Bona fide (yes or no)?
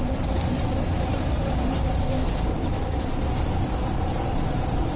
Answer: no